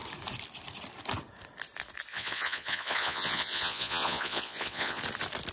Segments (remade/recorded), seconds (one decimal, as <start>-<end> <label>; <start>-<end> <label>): 0.0-2.1 recorded; 2.1-5.0 remade; 5.0-5.5 recorded